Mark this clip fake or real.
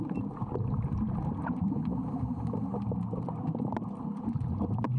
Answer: real